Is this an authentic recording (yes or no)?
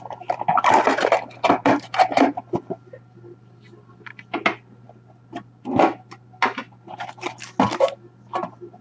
yes